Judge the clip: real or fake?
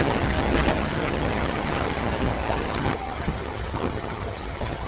fake